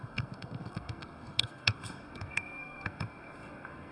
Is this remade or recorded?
remade